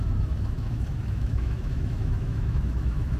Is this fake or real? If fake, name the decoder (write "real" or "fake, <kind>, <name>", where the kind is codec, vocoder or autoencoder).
fake, autoencoder, DAC-VAE